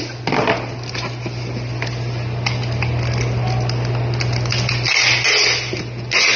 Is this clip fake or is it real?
real